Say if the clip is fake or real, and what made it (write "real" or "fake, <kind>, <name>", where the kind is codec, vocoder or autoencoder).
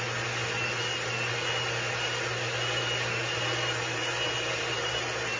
real